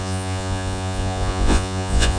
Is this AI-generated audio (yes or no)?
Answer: yes